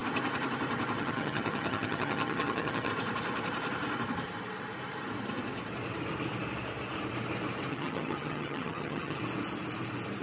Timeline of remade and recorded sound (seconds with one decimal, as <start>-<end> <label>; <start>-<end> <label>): 0.0-1.0 recorded; 1.0-2.9 remade; 2.9-7.7 recorded; 7.7-9.2 remade; 9.2-10.2 recorded